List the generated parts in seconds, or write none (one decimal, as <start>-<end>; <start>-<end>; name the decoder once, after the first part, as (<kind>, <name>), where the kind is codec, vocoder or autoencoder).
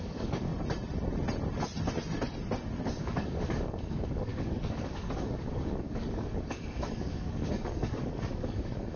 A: 0.0-0.5 (codec, DAC); 3.0-9.0